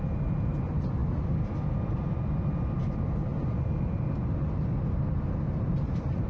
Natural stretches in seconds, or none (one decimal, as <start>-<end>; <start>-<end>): 1.0-1.9; 3.3-4.8